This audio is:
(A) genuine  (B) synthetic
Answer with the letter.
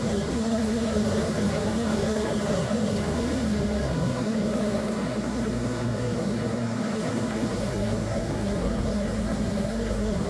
B